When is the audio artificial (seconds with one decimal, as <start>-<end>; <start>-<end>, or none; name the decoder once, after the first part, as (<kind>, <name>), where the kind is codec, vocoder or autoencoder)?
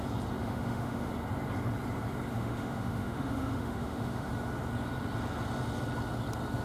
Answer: 0.4-1.1 (autoencoder, DAC-VAE); 2.3-4.3